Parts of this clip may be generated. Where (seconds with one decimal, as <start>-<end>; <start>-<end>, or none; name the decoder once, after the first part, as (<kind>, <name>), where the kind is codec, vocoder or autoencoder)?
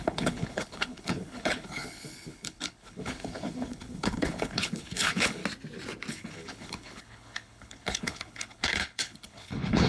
0.0-5.4 (codec, HILCodec); 6.1-9.9